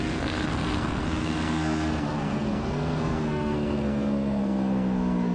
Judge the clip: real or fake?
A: fake